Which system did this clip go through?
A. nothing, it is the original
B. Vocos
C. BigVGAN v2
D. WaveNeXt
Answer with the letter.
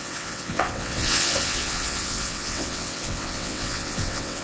D